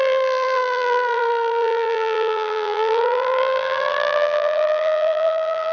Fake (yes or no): yes